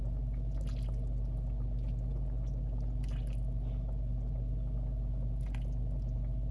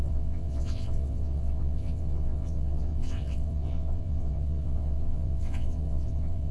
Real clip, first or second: first